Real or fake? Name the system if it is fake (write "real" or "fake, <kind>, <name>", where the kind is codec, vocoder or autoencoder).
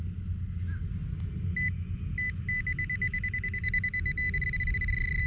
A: real